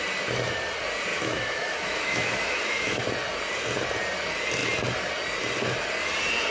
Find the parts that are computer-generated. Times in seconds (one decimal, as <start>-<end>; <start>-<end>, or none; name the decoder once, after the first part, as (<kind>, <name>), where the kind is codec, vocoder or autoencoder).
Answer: 1.1-3.0 (autoencoder, DAC-VAE)